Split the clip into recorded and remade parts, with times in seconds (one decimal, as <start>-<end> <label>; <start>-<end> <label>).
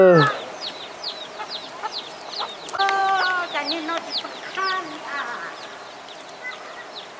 0.0-7.2 recorded